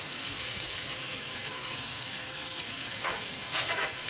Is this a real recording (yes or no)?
no